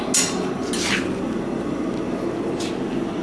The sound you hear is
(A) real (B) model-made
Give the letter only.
A